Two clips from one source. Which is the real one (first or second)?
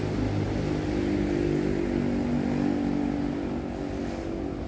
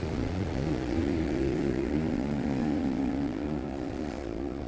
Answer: first